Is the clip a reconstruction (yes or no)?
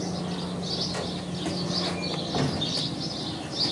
no